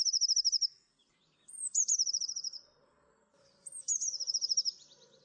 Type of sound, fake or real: fake